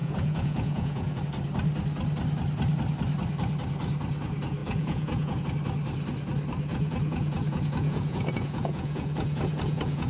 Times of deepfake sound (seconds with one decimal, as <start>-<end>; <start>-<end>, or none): 0.0-1.2; 4.6-5.4; 6.7-10.1